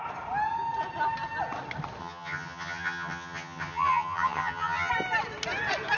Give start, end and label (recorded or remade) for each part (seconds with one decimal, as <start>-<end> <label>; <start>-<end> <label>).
0.0-2.0 recorded; 2.0-4.9 remade; 4.9-6.0 recorded